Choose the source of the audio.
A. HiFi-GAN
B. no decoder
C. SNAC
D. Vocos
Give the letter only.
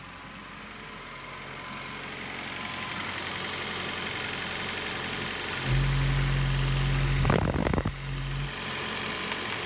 B